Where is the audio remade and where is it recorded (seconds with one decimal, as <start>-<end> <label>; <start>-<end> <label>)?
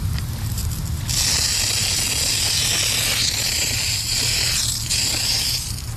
0.0-0.6 remade; 0.6-3.1 recorded; 3.1-6.0 remade